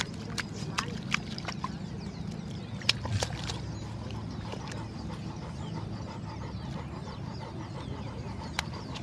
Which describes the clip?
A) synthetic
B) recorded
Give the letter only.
B